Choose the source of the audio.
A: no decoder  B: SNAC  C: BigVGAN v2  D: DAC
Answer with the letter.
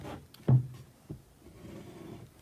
A